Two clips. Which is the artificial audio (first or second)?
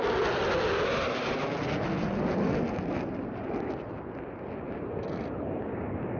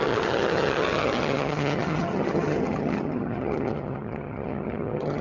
second